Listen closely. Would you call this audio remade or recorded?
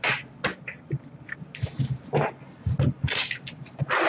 recorded